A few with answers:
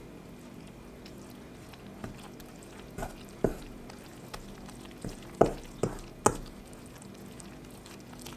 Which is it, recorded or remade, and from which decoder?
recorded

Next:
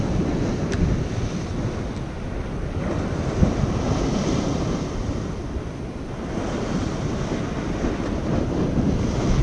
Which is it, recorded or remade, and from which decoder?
recorded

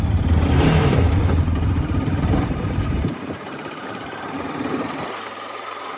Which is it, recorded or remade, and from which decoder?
remade, vocoder, BigVGAN v2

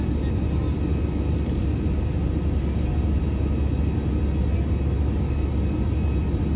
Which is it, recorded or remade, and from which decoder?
recorded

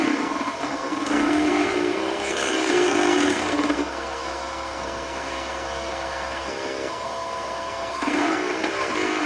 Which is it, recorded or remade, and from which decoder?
remade, codec, SNAC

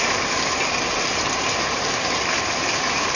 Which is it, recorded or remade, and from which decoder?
recorded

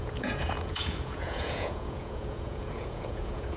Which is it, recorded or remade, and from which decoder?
remade, vocoder, Vocos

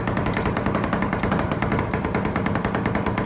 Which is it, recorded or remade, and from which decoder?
recorded